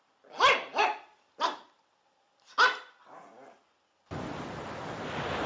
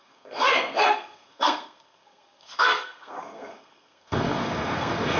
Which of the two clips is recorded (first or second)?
first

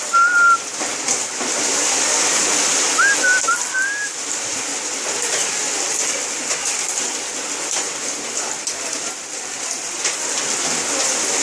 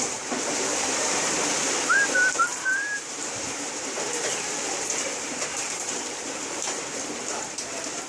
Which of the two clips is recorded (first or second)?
first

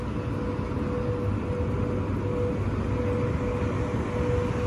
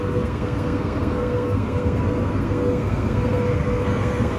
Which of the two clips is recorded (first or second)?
first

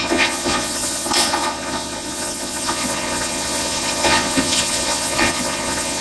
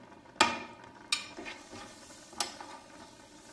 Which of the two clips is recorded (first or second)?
second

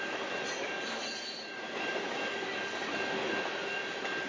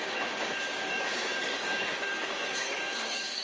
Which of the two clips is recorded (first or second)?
first